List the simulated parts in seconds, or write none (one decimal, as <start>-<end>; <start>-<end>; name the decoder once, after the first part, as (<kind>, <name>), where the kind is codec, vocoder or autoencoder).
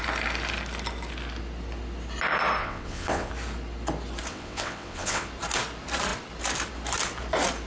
2.6-3.3 (vocoder, WaveNeXt); 4.3-5.3